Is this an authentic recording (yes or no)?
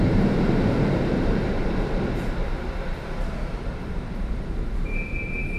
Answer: no